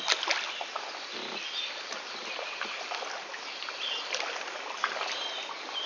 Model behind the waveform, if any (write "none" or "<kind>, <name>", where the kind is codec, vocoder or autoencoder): none